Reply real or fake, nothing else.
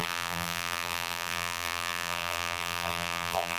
fake